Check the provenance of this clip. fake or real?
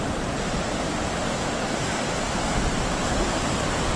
fake